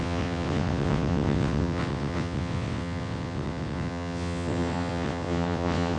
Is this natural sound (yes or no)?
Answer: no